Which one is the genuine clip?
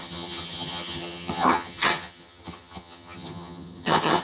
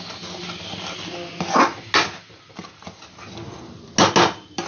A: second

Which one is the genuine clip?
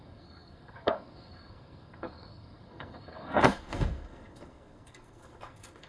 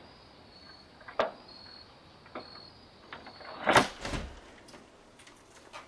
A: second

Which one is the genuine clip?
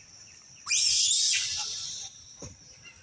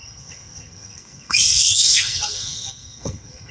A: first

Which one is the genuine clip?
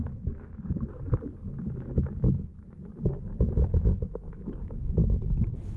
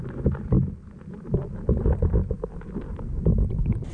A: second